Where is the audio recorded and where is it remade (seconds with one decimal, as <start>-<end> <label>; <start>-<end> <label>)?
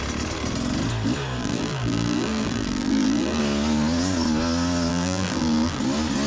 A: 0.0-1.4 recorded; 1.4-3.4 remade; 3.4-4.9 recorded; 4.9-5.8 remade; 5.8-6.3 recorded